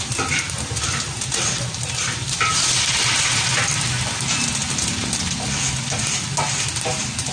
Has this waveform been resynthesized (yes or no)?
no